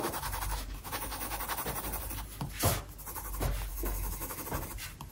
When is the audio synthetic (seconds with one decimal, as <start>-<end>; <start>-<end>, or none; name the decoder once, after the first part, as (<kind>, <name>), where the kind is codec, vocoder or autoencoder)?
0.5-1.4 (autoencoder, DAC-VAE); 3.7-4.4